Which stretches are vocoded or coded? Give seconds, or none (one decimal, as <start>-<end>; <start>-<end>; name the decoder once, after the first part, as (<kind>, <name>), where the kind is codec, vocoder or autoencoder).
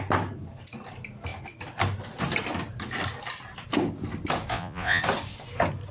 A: 4.5-5.0 (vocoder, Vocos)